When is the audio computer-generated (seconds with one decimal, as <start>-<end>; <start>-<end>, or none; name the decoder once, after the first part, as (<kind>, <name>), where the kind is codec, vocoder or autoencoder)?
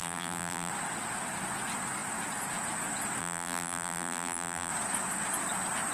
0.0-0.7 (vocoder, BigVGAN v2); 3.2-4.7